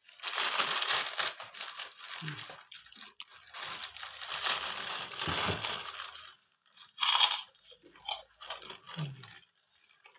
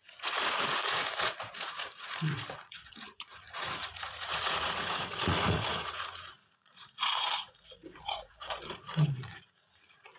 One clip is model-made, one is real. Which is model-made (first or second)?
second